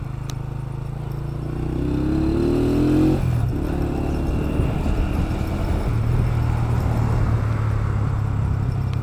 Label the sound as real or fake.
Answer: real